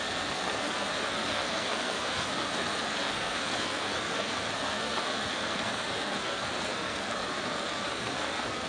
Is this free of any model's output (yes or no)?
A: no